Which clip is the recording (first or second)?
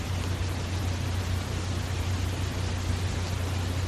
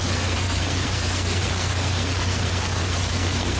first